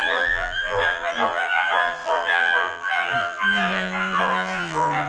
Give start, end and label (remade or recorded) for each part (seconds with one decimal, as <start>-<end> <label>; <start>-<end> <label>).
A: 0.0-5.1 remade